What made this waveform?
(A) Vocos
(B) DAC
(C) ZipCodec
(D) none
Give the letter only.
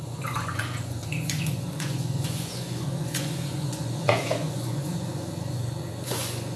A